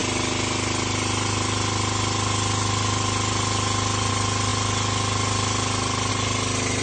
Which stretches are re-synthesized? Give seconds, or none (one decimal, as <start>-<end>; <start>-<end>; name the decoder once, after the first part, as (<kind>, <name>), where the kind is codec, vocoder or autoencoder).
none